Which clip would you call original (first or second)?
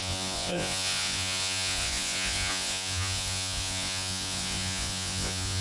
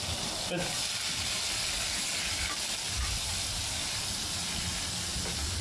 second